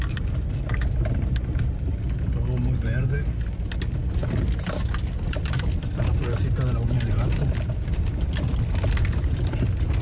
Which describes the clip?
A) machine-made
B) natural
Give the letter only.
B